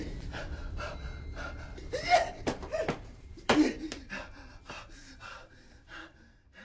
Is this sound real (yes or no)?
no